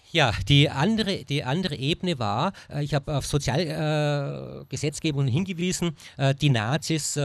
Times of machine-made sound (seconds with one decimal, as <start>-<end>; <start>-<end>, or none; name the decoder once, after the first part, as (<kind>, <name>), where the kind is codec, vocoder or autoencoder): 4.3-5.6 (codec, HILCodec); 6.5-7.2